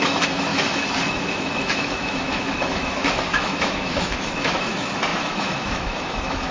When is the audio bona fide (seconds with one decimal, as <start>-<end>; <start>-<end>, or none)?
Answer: none